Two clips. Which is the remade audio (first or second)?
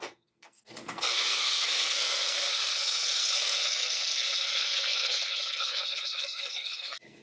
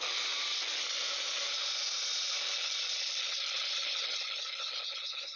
first